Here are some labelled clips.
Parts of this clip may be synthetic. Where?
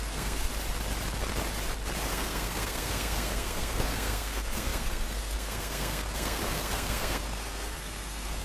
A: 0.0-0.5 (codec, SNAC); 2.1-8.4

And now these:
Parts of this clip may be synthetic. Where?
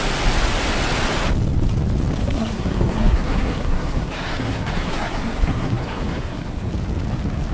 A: 2.2-6.7 (codec, SNAC)